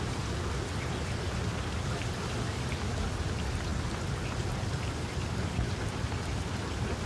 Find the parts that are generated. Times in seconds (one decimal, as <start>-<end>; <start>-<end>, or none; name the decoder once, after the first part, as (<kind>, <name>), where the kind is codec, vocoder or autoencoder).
none